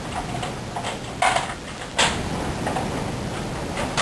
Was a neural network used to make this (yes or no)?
no